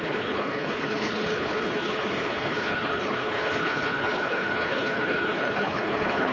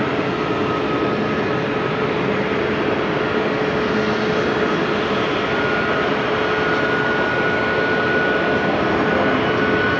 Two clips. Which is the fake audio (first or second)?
first